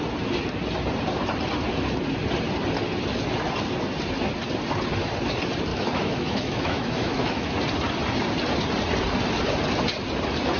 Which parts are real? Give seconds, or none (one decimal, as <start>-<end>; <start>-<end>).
0.0-5.7; 7.5-10.6